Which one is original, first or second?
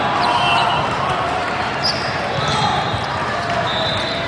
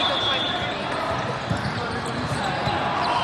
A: first